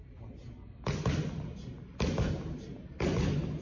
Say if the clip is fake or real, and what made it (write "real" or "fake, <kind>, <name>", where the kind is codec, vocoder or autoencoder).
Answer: real